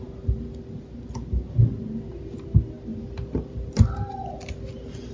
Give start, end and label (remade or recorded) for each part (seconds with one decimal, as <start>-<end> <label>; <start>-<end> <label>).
0.0-5.1 recorded